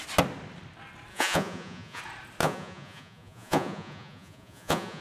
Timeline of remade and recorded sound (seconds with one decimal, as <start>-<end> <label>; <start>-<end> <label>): 0.0-1.1 recorded; 1.1-2.0 remade; 2.0-2.4 recorded; 2.4-5.0 remade